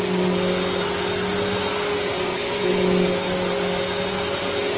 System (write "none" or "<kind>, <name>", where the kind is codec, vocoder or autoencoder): none